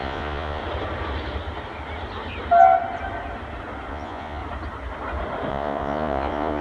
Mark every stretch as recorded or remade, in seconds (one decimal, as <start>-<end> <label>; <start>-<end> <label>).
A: 0.0-0.6 remade; 0.6-3.9 recorded; 3.9-4.4 remade; 4.4-5.5 recorded; 5.5-6.6 remade